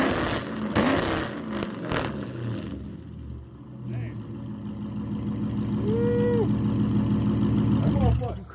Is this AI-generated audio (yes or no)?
no